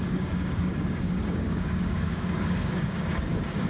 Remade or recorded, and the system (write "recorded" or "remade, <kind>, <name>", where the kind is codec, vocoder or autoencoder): remade, codec, DAC